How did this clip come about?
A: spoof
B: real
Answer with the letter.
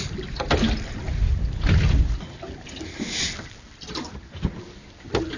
B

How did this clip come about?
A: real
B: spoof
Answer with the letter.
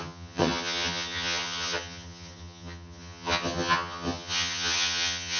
B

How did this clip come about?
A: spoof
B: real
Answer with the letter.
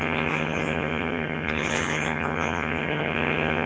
A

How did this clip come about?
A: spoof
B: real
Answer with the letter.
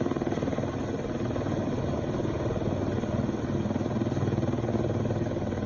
B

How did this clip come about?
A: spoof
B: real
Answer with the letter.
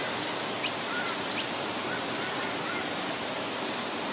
B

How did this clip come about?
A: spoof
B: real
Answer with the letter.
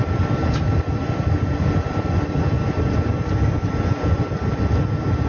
B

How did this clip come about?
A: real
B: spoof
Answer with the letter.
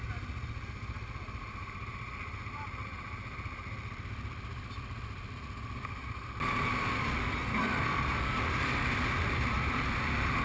A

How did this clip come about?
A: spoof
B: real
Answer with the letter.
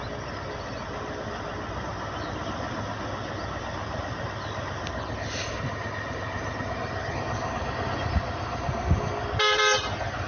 B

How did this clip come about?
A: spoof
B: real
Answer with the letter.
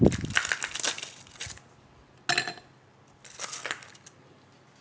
B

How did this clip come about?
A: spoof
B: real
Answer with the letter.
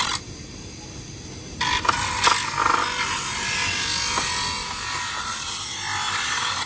B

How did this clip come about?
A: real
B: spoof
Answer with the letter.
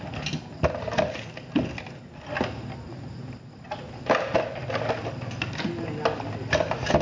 A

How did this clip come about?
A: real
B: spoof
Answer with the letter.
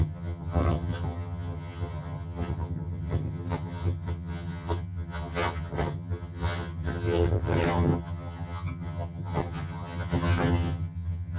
B